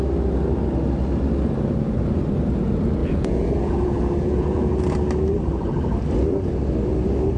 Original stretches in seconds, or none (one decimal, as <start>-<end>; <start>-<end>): 0.0-3.0; 4.8-7.4